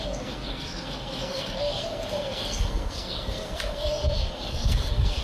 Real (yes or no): no